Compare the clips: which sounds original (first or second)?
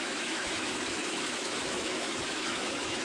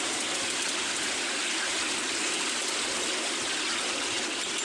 second